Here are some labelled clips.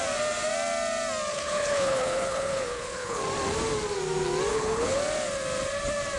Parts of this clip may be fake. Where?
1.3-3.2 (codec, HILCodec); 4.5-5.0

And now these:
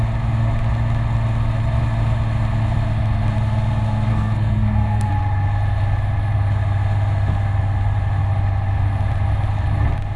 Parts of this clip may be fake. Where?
4.1-5.1 (codec, SNAC)

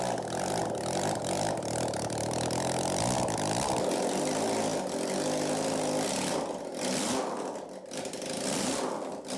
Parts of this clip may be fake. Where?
none